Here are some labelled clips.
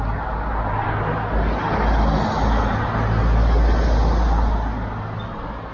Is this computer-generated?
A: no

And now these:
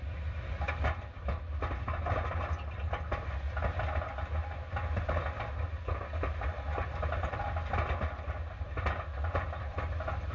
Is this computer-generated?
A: no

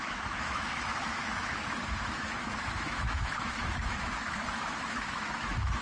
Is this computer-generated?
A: yes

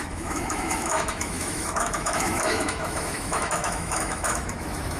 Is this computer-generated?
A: yes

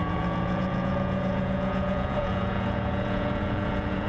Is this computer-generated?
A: yes